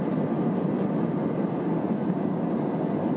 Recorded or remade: recorded